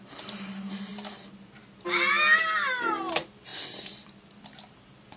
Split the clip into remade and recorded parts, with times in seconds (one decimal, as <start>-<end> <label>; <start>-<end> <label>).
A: 0.0-5.2 recorded